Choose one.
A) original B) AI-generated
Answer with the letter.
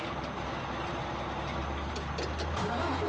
A